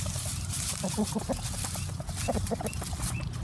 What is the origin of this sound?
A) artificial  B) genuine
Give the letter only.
B